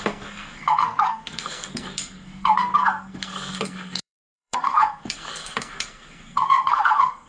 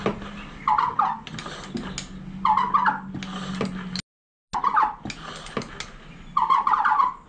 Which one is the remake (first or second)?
first